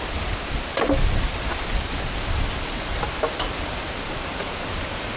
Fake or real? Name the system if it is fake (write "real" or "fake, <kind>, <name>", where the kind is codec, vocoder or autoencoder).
real